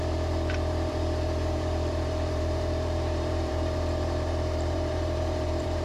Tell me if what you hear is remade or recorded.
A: remade